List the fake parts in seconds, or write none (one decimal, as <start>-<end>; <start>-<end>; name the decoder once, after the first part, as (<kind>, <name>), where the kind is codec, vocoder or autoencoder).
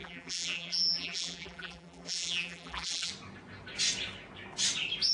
0.0-3.1 (vocoder, BigVGAN v2)